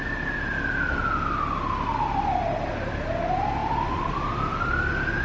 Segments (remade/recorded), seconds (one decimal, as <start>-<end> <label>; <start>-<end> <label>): 0.0-3.6 recorded; 3.6-4.7 remade; 4.7-5.2 recorded